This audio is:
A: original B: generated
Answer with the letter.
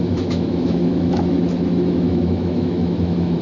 B